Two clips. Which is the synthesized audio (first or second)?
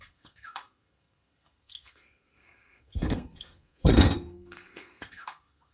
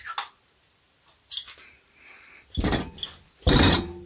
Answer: first